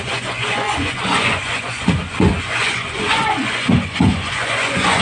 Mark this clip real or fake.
fake